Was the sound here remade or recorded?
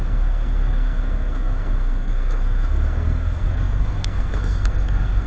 remade